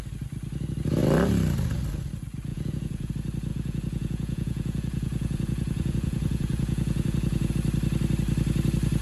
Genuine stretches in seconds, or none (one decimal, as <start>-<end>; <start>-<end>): 0.0-2.5; 3.1-3.5; 7.5-9.0